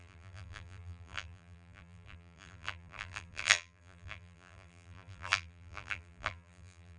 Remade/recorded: remade